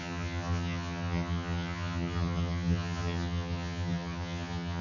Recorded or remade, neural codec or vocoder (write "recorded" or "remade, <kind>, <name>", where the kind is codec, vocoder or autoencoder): remade, vocoder, HiFi-GAN